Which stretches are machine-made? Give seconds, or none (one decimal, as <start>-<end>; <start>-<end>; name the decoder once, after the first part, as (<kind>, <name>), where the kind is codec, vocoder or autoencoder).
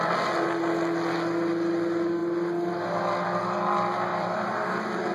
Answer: 4.1-5.1 (vocoder, BigVGAN v2)